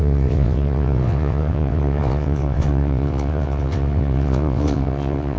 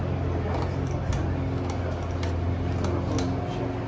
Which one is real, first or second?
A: second